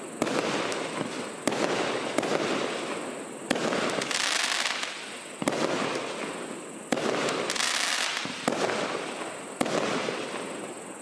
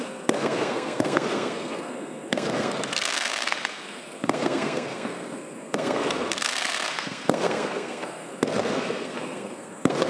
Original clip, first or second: first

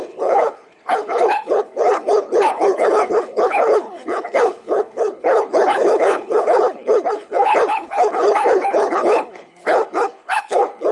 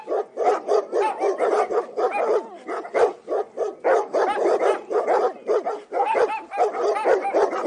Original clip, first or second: second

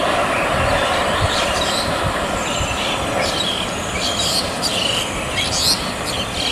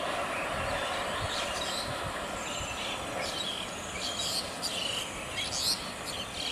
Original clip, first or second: second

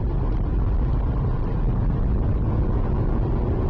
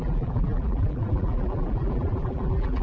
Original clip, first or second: first